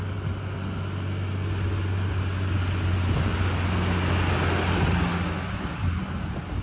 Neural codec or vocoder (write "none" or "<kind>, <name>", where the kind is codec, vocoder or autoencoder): none